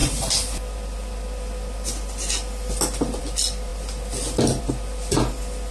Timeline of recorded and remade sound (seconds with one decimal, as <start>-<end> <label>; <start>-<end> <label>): 0.0-5.7 recorded